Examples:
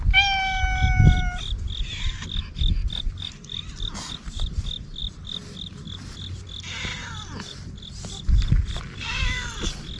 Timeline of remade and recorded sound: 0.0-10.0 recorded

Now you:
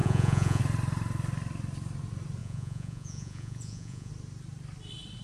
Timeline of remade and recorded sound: 0.0-0.6 remade; 0.6-2.4 recorded; 2.4-4.1 remade; 4.1-5.2 recorded

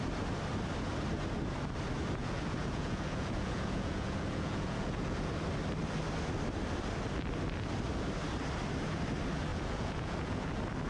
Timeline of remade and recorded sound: 0.0-2.2 recorded; 2.2-5.3 remade; 5.3-9.5 recorded; 9.5-10.5 remade; 10.5-10.9 recorded

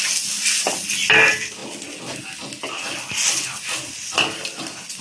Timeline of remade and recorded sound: 0.0-5.0 recorded

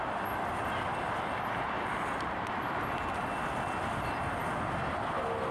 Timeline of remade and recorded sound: 0.0-1.0 recorded; 1.0-2.9 remade; 2.9-5.5 recorded

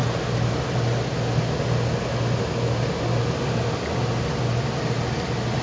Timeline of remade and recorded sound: 0.0-5.6 recorded

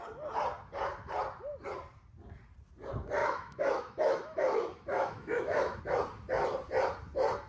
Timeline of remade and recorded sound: 0.0-3.2 recorded; 3.2-5.8 remade; 5.8-7.5 recorded